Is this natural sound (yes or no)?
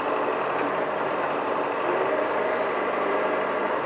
yes